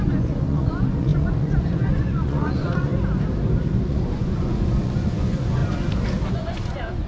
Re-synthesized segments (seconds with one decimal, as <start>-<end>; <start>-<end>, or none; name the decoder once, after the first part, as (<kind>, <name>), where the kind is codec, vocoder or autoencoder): 0.0-2.9 (vocoder, Vocos); 3.9-5.6; 6.3-7.1